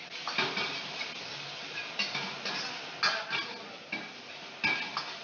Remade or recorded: recorded